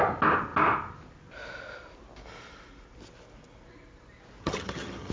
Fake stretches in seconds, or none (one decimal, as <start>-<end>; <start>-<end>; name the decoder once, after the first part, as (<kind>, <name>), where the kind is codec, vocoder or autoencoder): 4.4-5.1 (vocoder, HiFi-GAN)